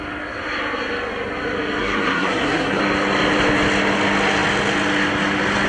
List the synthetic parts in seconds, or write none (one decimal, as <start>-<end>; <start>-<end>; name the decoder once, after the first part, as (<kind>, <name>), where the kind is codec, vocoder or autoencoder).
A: 1.8-2.8 (codec, SNAC)